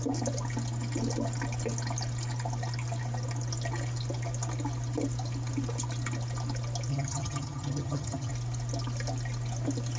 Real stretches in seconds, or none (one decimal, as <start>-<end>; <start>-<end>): 0.0-6.9; 8.3-10.0

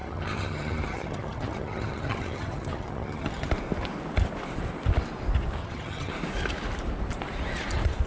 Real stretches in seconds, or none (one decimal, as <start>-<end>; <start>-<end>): 3.5-5.6; 6.1-8.1

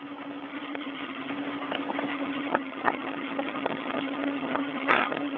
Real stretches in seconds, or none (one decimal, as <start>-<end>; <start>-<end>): 0.0-0.5; 1.3-2.1

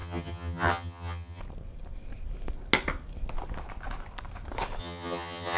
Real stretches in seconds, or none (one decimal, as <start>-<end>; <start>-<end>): 1.4-4.8

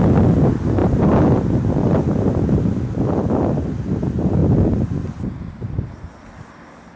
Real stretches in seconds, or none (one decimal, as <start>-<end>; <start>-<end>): 0.0-7.0

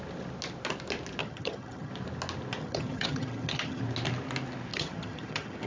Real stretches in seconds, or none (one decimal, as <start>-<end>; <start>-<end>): 0.0-1.2; 1.9-2.6; 3.8-4.7

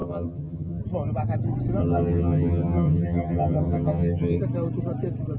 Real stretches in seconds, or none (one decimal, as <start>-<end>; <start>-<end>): 0.8-1.8; 4.4-5.4